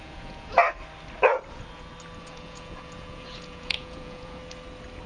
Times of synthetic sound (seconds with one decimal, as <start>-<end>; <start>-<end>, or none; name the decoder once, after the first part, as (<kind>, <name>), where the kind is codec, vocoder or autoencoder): 0.0-0.6 (vocoder, Vocos); 2.2-4.4